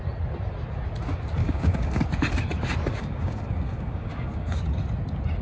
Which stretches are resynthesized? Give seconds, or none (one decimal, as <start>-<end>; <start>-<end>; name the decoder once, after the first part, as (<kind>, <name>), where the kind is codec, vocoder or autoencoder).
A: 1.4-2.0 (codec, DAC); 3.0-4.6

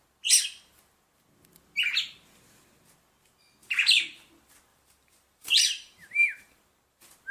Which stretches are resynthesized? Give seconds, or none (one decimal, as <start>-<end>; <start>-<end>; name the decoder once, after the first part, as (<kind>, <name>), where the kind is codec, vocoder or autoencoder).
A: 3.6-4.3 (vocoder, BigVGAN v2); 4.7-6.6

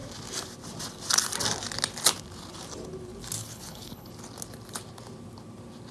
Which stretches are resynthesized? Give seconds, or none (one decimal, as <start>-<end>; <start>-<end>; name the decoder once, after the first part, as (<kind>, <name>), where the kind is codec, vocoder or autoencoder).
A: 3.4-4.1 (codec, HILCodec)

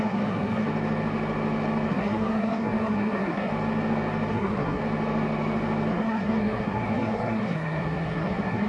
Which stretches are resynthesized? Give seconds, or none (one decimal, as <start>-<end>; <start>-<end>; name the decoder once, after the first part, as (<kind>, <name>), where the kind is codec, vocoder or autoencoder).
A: 0.0-0.7 (codec, SNAC); 1.9-3.5; 4.3-4.8; 5.9-8.7

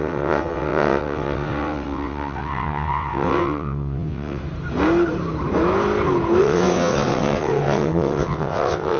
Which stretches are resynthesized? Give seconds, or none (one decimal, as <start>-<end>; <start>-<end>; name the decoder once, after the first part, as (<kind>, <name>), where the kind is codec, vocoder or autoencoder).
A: 0.0-4.4 (vocoder, WaveNeXt); 6.4-9.0

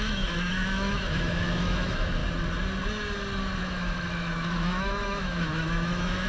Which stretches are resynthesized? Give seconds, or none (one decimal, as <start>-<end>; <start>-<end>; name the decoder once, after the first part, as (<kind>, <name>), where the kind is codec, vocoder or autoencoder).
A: 0.0-2.2 (autoencoder, DAC-VAE); 3.6-6.3

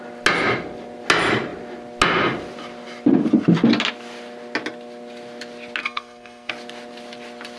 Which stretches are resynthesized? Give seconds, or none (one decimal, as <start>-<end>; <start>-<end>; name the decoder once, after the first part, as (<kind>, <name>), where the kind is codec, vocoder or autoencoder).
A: 5.8-6.5 (codec, SNAC)